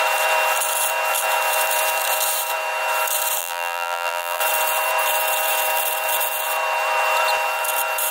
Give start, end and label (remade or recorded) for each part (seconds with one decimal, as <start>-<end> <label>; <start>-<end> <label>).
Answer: 0.0-3.4 recorded; 3.4-4.4 remade; 4.4-8.1 recorded